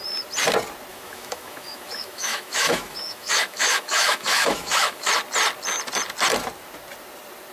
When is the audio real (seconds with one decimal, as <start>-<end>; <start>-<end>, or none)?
0.0-0.9; 5.1-7.5